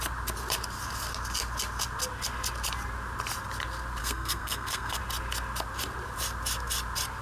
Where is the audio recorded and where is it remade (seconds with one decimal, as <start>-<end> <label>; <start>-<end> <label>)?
0.0-4.0 recorded; 4.0-5.0 remade; 5.0-7.2 recorded